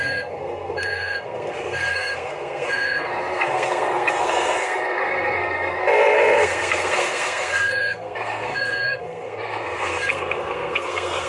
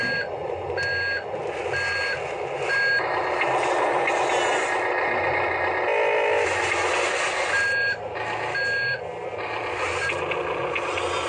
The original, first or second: second